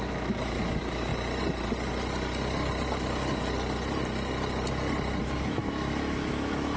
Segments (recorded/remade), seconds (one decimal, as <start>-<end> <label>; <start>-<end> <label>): 0.0-1.1 remade; 1.1-5.2 recorded; 5.2-6.8 remade